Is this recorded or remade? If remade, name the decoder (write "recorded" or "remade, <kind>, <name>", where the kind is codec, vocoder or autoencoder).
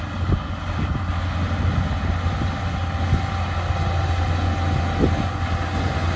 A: recorded